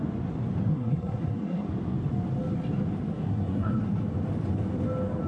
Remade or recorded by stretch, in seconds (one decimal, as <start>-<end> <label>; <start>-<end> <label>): 0.0-0.7 recorded; 0.7-1.7 remade; 1.7-3.1 recorded; 3.1-3.7 remade; 3.7-5.3 recorded